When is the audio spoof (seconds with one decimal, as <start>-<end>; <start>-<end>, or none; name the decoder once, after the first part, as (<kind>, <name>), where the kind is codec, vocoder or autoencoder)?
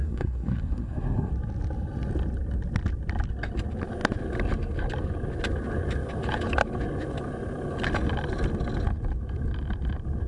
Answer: 0.0-1.3 (codec, SNAC)